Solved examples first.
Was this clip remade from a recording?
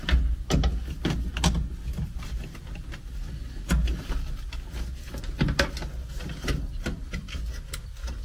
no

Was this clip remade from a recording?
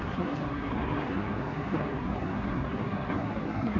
yes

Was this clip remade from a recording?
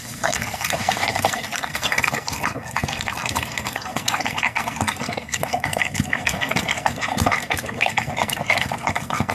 yes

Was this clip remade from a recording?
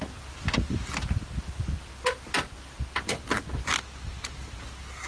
no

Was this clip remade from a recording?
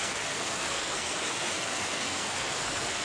yes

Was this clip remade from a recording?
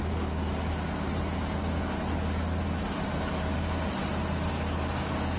no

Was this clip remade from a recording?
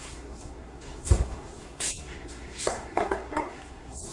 yes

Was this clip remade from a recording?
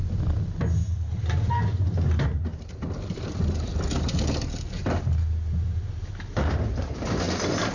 no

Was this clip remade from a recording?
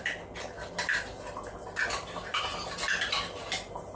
no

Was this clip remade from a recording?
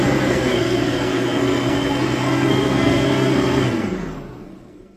yes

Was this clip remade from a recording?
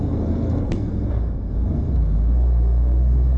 yes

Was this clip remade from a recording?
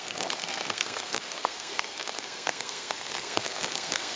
yes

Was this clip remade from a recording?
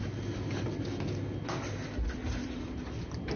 no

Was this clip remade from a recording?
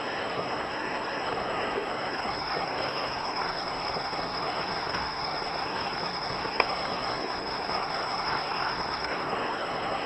yes